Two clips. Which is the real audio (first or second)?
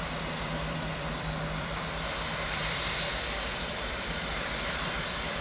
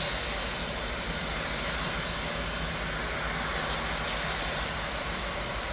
second